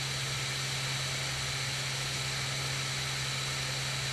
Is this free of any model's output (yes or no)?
yes